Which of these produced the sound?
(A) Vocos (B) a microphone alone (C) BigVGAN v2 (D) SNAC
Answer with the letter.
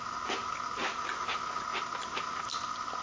B